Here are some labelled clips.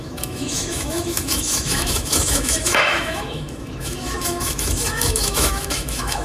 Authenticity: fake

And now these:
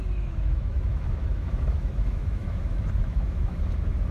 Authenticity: fake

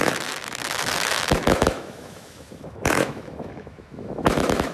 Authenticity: fake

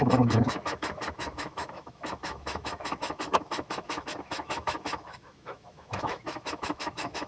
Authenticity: fake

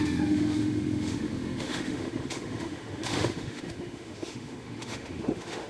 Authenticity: fake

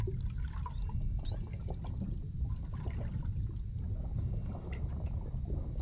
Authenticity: real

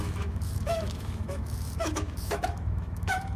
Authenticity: fake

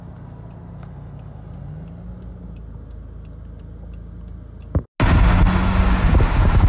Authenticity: real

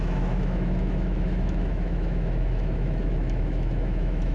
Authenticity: fake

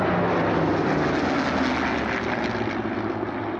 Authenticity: real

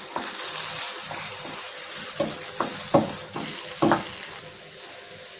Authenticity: real